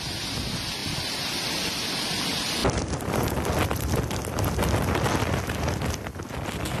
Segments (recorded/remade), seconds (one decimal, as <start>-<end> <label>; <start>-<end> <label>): 0.0-6.8 recorded